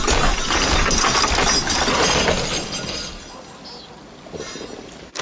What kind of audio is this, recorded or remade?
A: recorded